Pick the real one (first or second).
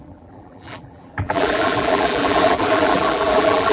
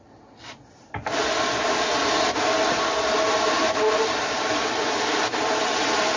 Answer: second